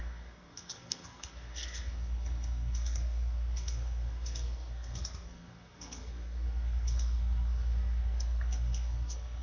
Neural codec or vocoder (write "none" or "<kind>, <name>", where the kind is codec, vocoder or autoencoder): codec, SNAC